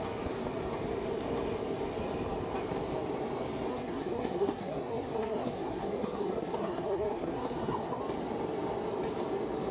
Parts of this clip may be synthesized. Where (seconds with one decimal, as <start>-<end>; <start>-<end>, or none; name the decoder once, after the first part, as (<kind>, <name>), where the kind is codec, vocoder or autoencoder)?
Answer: 3.7-8.0 (codec, SNAC)